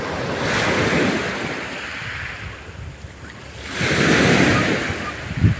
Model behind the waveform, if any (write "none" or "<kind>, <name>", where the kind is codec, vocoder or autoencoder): none